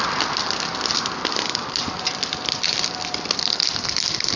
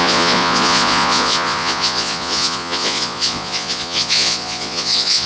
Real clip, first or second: first